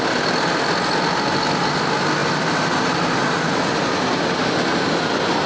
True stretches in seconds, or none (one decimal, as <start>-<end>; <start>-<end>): 0.0-5.5